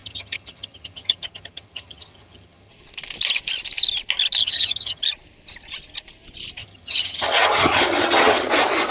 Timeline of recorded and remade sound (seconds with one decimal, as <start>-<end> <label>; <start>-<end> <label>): 0.0-2.7 remade; 2.7-4.4 recorded; 4.4-5.0 remade; 5.0-6.6 recorded; 6.6-8.5 remade; 8.5-8.9 recorded